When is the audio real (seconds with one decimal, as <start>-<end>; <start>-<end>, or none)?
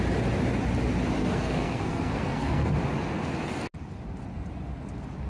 0.0-1.2; 2.7-5.3